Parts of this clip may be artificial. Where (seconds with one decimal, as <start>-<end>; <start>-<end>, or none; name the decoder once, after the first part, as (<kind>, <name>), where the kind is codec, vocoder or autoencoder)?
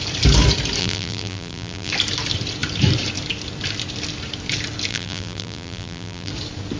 0.8-1.9 (vocoder, BigVGAN v2); 4.9-6.3